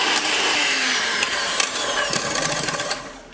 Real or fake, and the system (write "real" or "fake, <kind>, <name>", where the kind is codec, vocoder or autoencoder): fake, vocoder, BigVGAN v2